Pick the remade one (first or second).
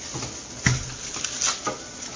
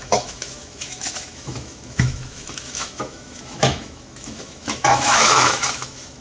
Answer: second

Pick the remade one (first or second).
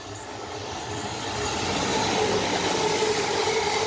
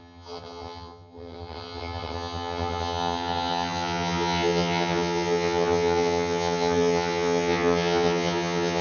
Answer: second